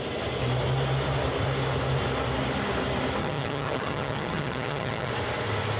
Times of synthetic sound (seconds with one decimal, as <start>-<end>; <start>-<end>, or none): 3.2-5.1